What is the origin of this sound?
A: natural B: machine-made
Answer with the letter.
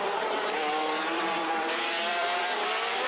B